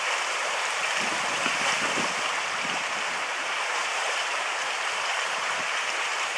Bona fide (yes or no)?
no